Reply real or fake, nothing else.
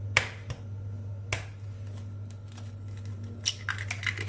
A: real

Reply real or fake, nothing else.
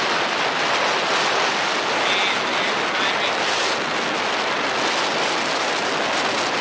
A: real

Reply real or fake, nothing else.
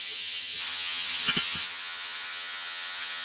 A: fake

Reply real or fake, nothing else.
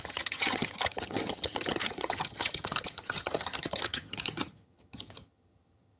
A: fake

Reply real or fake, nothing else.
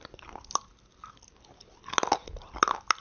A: real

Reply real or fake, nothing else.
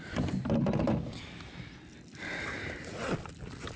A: real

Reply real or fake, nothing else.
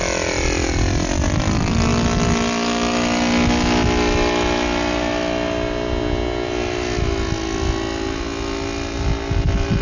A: real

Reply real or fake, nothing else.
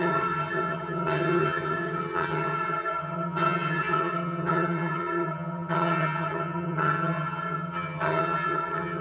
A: fake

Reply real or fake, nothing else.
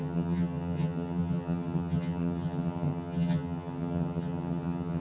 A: fake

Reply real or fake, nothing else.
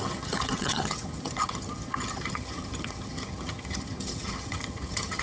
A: fake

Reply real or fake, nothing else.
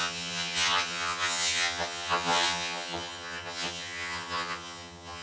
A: fake